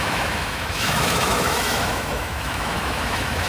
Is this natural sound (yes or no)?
no